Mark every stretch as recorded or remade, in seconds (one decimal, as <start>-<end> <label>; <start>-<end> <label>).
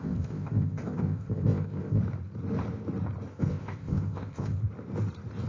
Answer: 0.0-2.0 remade; 2.0-3.3 recorded; 3.3-4.6 remade; 4.6-5.5 recorded